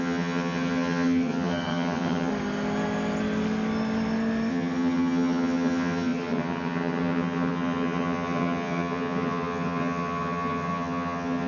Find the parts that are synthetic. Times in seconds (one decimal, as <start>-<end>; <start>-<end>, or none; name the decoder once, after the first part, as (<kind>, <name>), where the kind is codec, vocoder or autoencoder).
0.0-2.3 (vocoder, HiFi-GAN); 4.5-11.5